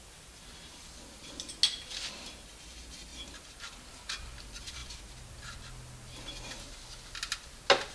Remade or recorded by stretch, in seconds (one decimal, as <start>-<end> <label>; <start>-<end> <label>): 0.0-7.9 recorded